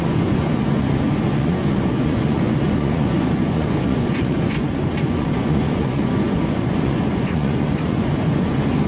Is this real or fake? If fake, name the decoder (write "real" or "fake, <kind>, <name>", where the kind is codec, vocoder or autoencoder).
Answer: fake, vocoder, Vocos